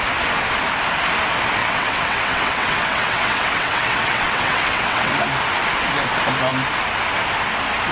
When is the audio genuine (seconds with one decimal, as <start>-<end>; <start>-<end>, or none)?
0.0-1.6; 5.1-7.9